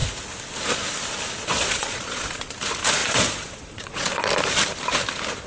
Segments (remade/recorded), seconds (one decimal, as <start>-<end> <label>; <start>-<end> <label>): 0.0-1.5 recorded; 1.5-2.5 remade; 2.5-3.0 recorded; 3.0-4.1 remade; 4.1-5.5 recorded